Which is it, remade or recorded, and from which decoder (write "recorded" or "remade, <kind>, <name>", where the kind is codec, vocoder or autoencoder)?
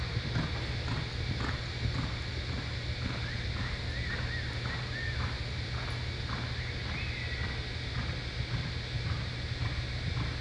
recorded